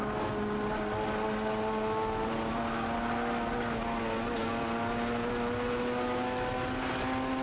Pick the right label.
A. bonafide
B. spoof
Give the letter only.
A